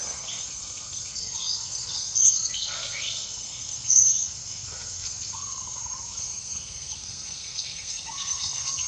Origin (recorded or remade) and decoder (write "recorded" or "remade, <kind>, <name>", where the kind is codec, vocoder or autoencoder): remade, codec, SNAC